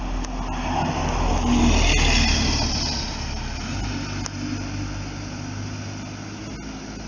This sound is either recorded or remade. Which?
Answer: recorded